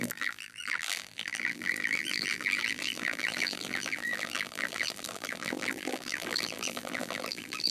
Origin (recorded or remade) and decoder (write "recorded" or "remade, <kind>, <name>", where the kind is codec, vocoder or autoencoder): remade, vocoder, BigVGAN v2